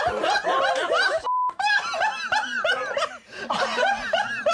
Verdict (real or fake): fake